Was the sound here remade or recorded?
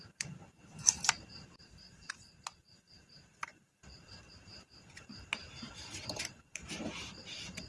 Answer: remade